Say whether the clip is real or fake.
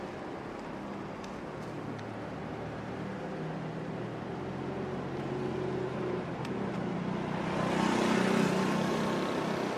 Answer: real